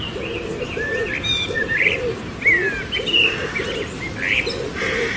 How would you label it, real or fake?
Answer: real